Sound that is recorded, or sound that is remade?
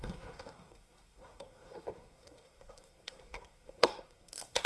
remade